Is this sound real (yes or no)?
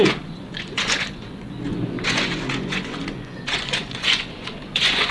no